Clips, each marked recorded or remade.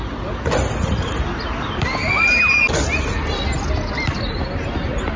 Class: recorded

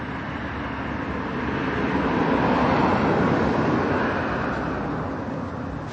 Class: recorded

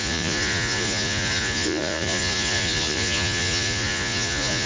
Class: remade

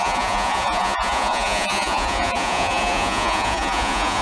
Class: remade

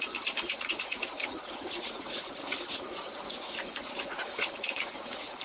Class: remade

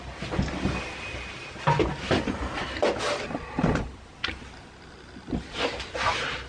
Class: recorded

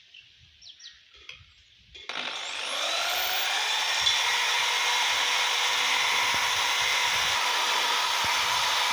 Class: recorded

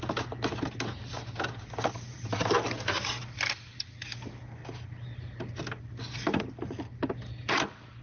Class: recorded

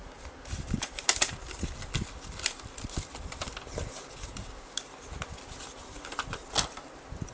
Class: recorded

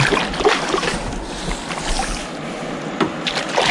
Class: recorded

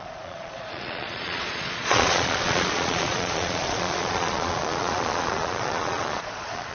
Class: remade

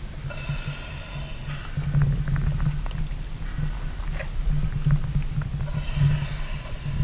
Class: recorded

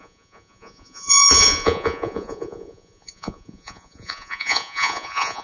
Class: remade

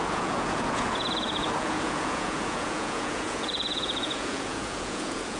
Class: remade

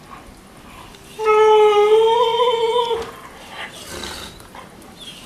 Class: recorded